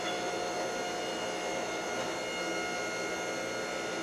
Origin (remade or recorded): recorded